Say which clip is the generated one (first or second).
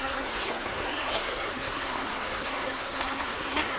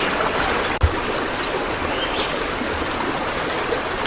first